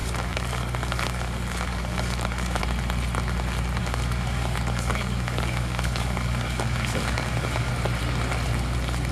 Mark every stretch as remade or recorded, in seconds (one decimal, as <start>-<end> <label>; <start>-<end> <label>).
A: 0.0-2.6 remade; 2.6-3.8 recorded; 3.8-7.7 remade; 7.7-9.1 recorded